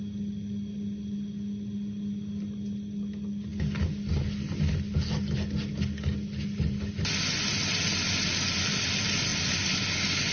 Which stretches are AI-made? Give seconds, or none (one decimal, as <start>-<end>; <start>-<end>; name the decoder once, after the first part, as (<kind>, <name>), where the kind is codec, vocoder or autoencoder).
none